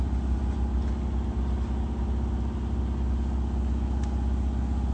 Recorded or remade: recorded